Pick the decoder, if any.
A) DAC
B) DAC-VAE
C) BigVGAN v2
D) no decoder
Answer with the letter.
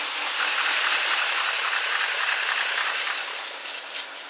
D